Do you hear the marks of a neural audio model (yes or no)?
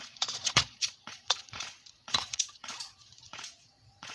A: yes